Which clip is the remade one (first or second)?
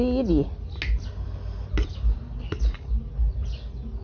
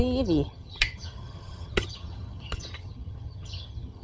second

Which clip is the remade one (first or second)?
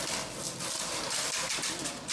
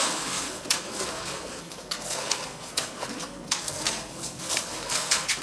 second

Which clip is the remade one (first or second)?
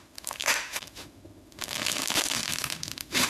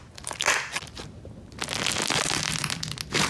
first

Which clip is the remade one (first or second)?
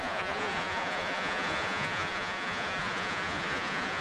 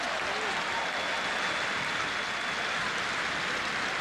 first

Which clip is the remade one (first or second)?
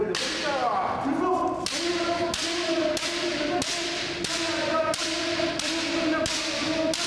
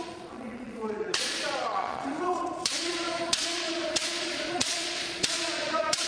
second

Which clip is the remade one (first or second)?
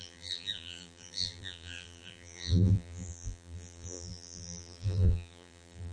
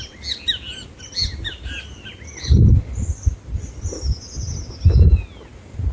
first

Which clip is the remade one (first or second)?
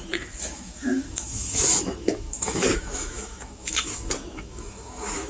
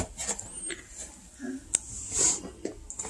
first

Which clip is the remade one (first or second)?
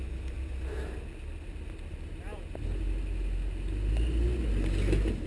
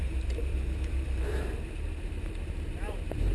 second